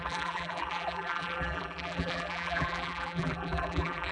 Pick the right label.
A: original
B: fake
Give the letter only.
B